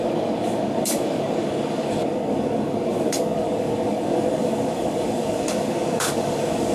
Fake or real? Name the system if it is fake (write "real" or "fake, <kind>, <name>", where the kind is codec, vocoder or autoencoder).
fake, codec, DAC